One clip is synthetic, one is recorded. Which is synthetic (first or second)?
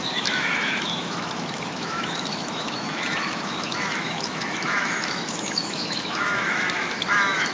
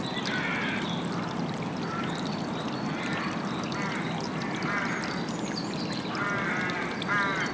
first